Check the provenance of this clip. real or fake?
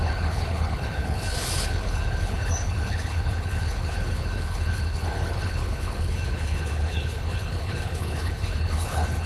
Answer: fake